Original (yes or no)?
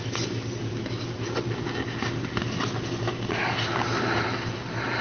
yes